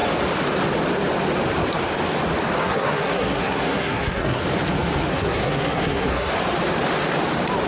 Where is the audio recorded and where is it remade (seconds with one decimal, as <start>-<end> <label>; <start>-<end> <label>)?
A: 0.0-2.6 recorded; 2.6-4.4 remade; 4.4-5.1 recorded; 5.1-6.3 remade; 6.3-7.7 recorded